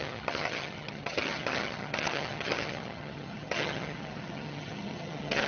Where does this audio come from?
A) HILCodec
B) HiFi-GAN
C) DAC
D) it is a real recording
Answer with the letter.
B